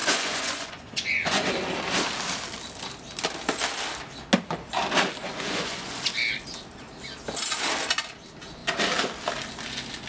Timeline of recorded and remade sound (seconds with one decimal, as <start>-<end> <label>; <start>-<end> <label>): 0.0-1.5 remade; 1.5-5.2 recorded; 5.2-6.0 remade; 6.0-10.1 recorded